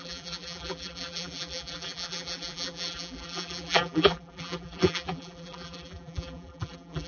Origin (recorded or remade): remade